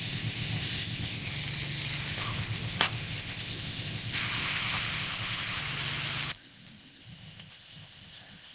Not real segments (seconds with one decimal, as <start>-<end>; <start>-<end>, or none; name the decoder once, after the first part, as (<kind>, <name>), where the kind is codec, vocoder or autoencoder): 0.0-1.3 (codec, ZipCodec); 2.1-5.6; 6.3-8.5